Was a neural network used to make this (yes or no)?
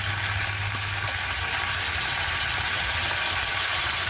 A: no